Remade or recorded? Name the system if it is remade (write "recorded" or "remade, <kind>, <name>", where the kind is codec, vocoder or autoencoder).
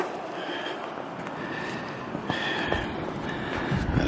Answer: recorded